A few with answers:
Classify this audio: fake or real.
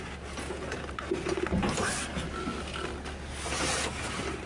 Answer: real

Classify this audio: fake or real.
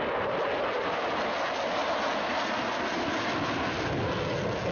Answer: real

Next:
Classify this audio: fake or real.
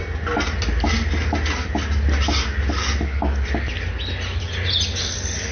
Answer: real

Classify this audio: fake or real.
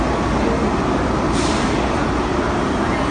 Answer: real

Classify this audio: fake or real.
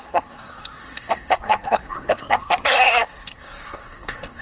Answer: fake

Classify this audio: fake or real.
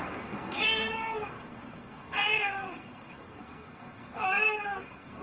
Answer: fake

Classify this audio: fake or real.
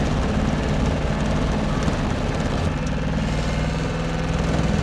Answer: real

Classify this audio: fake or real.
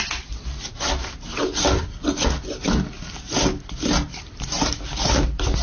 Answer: real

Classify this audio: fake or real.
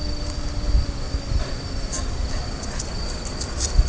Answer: real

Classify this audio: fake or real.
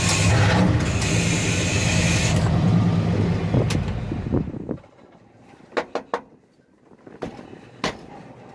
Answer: real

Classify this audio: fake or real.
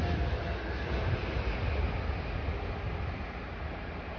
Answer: real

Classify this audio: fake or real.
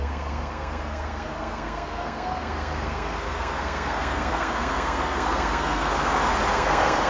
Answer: fake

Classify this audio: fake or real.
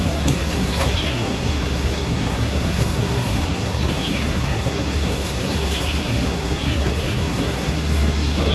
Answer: fake